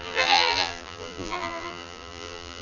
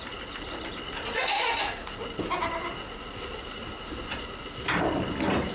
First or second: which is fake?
first